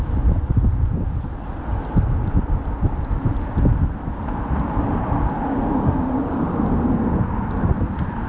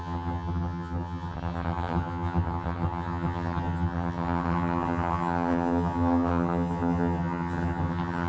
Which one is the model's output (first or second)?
second